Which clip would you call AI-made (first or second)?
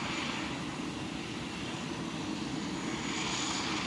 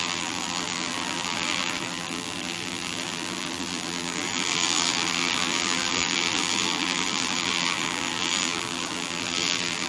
second